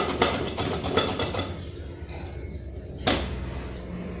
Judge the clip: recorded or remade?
recorded